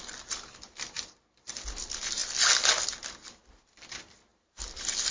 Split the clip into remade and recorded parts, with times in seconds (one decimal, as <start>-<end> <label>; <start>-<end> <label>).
0.0-4.3 recorded; 4.3-5.1 remade